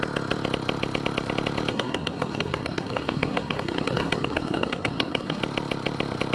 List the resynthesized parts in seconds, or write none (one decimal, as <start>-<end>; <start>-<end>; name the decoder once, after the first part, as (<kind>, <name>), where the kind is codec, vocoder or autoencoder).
1.7-5.4 (codec, SNAC)